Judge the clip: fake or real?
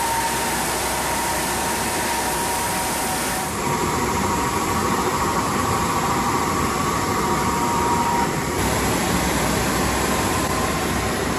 fake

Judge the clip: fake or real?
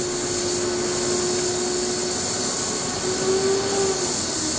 real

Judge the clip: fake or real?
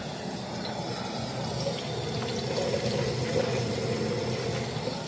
real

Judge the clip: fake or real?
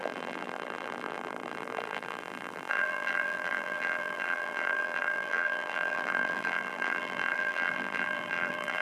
fake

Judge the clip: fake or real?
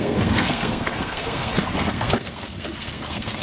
fake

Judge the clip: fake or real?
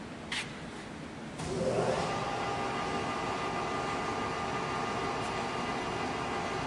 real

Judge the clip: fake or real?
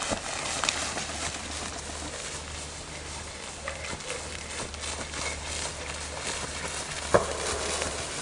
real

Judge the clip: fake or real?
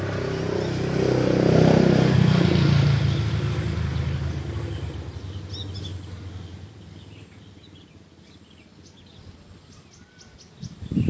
real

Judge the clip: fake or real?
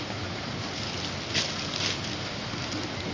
real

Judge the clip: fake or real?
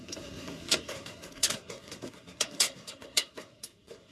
fake